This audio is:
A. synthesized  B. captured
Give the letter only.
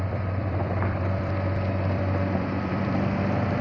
A